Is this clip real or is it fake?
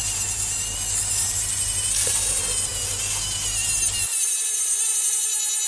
real